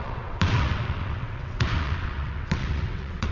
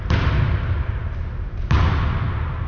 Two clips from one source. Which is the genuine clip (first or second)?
second